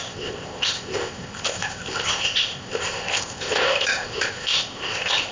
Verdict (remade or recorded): remade